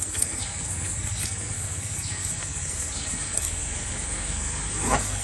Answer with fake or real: fake